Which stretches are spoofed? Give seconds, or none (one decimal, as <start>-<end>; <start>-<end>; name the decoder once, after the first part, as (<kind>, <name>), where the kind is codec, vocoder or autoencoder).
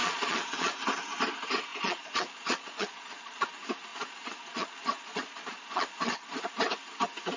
0.0-0.8 (vocoder, Vocos); 1.7-3.5; 3.9-6.5